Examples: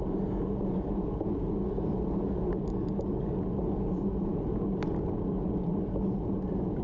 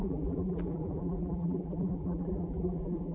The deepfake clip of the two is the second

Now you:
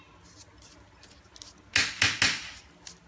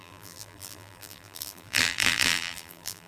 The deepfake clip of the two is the second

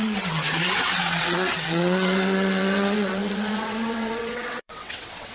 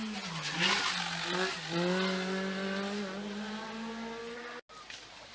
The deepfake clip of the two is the first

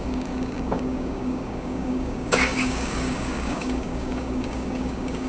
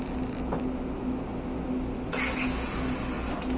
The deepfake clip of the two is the first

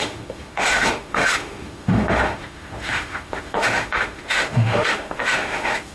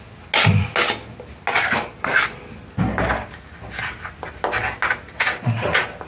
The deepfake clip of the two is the first